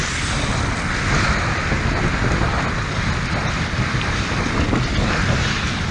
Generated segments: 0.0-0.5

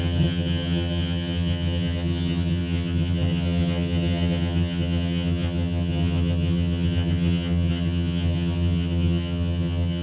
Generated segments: 0.0-10.0

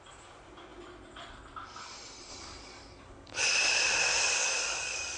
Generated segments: 2.3-3.4; 4.4-5.2

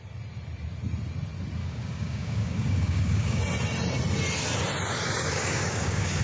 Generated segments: 1.6-3.4; 4.9-6.2

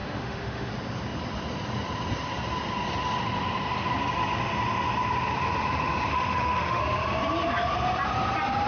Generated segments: 0.0-0.7; 6.1-6.8